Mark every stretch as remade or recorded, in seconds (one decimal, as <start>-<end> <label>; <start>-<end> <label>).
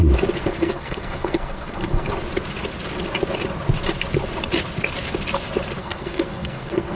0.0-0.4 recorded; 0.4-2.1 remade; 2.1-5.8 recorded; 5.8-7.0 remade